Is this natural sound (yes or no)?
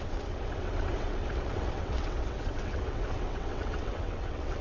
no